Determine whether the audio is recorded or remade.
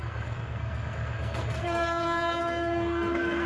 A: remade